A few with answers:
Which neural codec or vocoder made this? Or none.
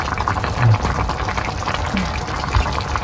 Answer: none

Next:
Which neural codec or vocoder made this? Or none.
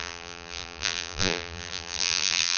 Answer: vocoder, BigVGAN v2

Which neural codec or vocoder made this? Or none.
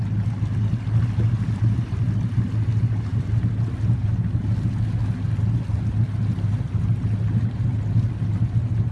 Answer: none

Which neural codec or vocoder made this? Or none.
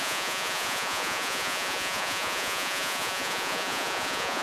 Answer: vocoder, Vocos